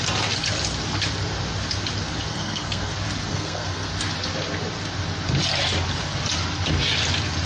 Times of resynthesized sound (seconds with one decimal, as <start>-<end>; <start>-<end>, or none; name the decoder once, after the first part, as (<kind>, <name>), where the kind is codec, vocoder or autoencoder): 2.3-2.9 (codec, SNAC); 3.3-3.9